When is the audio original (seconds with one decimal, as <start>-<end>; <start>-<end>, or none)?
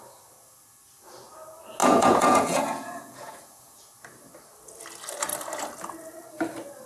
0.0-1.8; 3.8-6.9